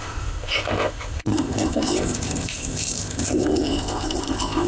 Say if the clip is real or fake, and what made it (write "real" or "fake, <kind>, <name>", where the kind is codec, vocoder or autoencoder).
fake, codec, ZipCodec